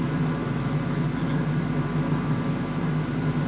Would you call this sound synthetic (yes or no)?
no